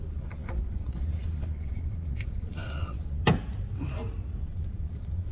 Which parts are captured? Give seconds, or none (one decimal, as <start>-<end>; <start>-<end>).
3.2-4.4